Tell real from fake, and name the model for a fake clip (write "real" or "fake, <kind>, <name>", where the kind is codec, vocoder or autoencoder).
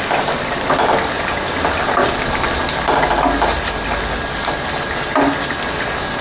real